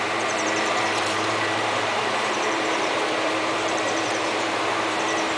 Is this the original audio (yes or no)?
no